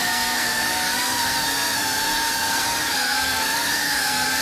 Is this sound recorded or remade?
remade